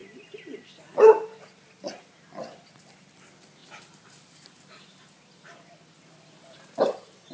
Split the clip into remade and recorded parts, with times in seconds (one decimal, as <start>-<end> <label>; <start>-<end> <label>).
0.0-7.3 recorded